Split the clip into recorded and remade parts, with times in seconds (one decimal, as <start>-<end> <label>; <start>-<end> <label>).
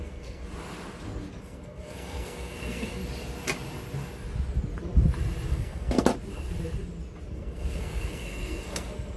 0.0-0.4 remade; 0.4-1.4 recorded; 1.4-3.0 remade; 3.0-5.5 recorded; 5.5-6.1 remade; 6.1-7.3 recorded; 7.3-9.2 remade